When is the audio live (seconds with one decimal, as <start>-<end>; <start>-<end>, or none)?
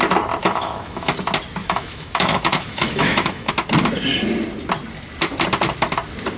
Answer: 0.0-0.4; 1.1-1.6; 3.5-6.4